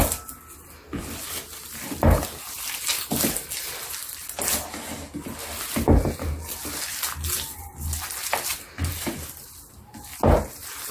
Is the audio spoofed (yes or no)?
no